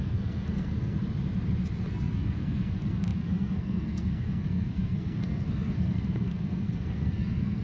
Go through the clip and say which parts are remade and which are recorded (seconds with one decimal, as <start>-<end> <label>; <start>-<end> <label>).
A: 0.0-1.0 remade; 1.0-1.9 recorded; 1.9-7.6 remade